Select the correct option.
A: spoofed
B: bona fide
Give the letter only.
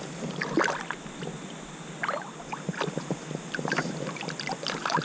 B